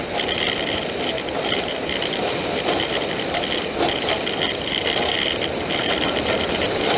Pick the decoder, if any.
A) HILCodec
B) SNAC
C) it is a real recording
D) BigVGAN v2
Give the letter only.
C